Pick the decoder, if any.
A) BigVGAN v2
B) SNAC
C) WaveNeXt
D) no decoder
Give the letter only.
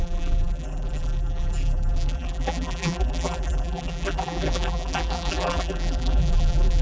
A